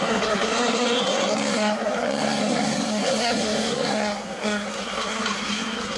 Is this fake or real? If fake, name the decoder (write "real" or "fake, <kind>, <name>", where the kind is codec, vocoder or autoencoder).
fake, codec, SNAC